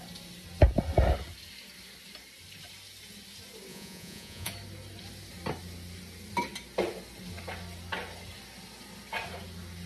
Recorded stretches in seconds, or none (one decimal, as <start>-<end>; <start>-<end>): 0.0-3.7; 4.5-9.9

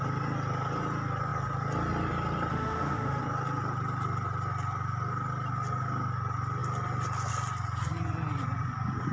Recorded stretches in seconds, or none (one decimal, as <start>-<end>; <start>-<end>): 0.0-2.5; 3.2-9.1

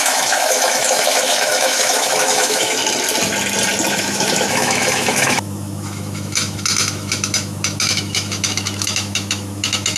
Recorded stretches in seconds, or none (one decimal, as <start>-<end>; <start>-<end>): 2.8-3.9

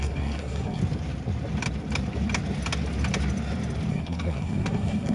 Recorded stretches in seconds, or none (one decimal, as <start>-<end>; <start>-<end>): 0.8-3.9

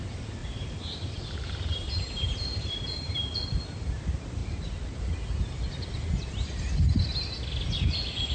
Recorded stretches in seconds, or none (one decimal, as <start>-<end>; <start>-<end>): 0.0-0.4; 3.4-4.4; 5.0-8.3

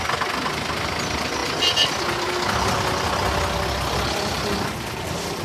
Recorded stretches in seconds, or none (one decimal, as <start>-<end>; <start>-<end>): 0.0-5.4